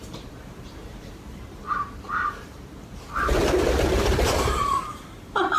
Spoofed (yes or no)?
yes